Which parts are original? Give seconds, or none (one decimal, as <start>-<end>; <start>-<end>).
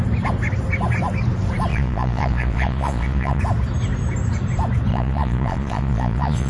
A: 0.0-1.7; 3.4-4.9